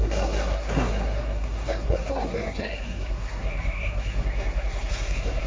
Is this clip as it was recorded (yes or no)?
no